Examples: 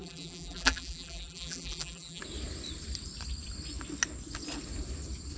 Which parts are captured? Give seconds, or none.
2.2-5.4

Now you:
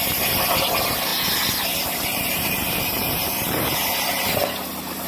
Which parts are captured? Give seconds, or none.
0.0-2.1; 3.9-5.1

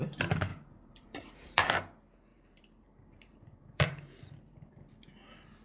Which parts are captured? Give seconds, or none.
0.0-0.5; 1.7-2.3; 4.9-5.6

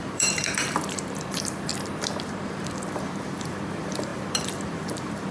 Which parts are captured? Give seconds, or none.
1.7-2.3